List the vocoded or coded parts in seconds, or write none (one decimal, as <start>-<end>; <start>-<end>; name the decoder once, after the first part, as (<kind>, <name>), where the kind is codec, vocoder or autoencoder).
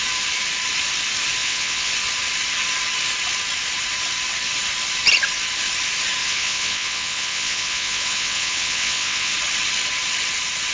1.4-1.9 (vocoder, WaveNeXt); 6.2-9.3